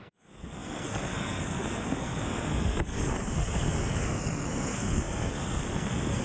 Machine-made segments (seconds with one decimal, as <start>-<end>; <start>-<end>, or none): 0.0-6.2